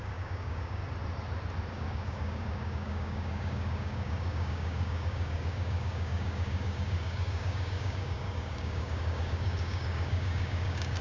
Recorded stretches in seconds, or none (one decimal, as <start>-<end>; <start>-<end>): 0.8-1.7

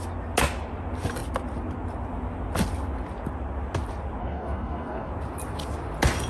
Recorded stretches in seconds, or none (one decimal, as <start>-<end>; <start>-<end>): 0.0-4.2; 5.1-6.3

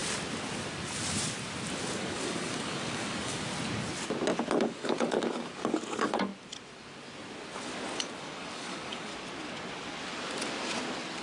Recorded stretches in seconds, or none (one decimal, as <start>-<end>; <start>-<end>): 0.0-2.0; 3.5-4.6; 6.3-8.0; 9.1-11.2